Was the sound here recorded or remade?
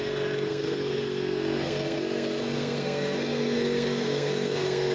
remade